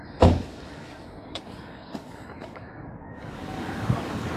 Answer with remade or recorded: remade